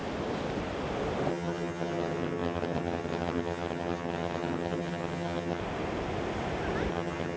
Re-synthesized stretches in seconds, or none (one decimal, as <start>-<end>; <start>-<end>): 1.3-5.6; 6.9-7.4